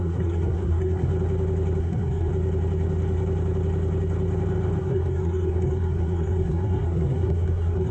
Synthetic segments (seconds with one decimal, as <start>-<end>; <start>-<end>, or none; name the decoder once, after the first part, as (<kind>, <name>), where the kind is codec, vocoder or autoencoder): 0.0-1.1 (codec, SNAC); 1.8-2.3; 4.8-7.9